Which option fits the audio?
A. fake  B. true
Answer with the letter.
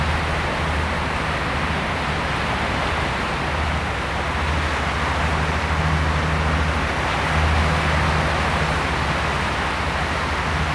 B